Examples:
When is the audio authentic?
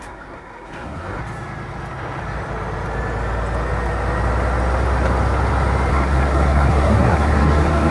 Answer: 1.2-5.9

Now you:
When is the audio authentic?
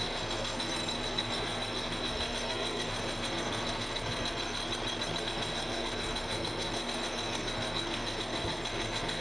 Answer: 4.6-5.2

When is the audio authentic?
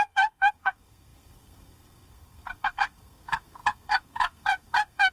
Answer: none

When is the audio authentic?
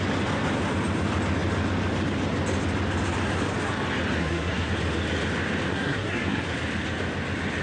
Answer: 0.0-4.2; 4.7-5.7; 6.4-7.6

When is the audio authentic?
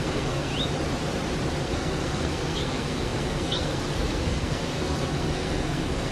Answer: 0.5-1.6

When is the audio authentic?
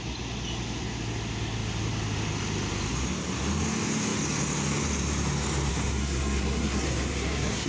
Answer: 0.0-5.7